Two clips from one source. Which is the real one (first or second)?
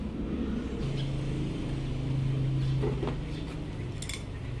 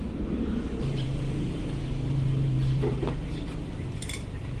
first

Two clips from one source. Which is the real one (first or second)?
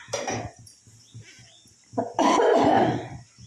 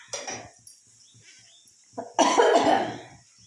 second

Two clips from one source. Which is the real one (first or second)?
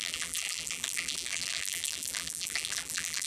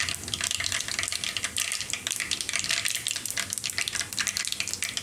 second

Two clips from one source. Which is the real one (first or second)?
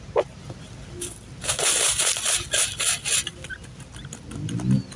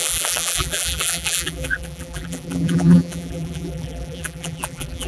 first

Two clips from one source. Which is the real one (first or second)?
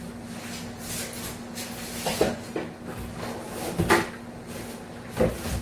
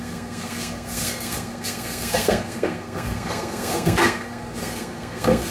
first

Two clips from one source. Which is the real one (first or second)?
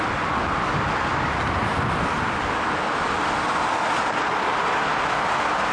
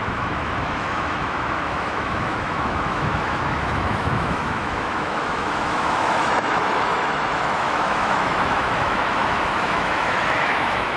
first